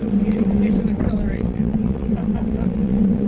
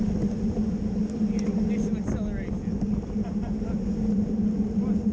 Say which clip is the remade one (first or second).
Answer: first